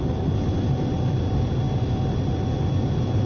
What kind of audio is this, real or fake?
real